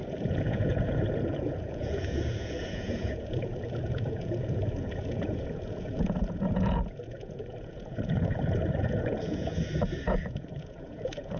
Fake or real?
fake